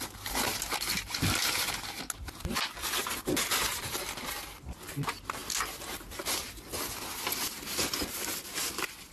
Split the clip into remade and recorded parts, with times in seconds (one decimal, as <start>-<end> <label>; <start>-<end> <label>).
0.0-9.1 recorded